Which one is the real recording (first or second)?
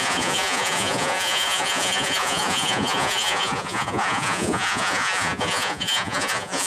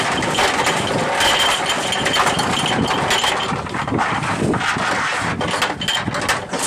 second